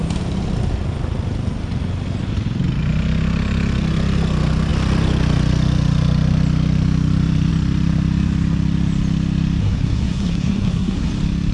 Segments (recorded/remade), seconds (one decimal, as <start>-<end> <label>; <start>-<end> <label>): 0.0-9.6 recorded; 9.6-11.1 remade; 11.1-11.5 recorded